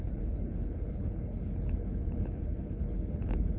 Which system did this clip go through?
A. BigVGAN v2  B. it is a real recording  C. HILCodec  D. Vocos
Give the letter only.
C